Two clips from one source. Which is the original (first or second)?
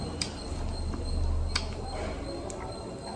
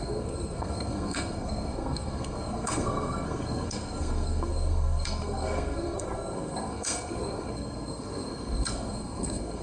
first